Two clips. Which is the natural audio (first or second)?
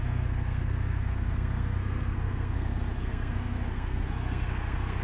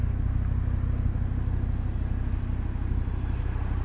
second